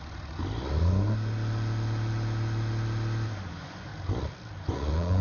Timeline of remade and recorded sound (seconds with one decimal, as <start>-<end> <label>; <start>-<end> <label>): 0.0-0.4 remade; 0.4-3.5 recorded; 3.5-3.9 remade; 3.9-4.7 recorded; 4.7-5.2 remade